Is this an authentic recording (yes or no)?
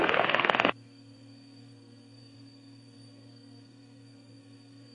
no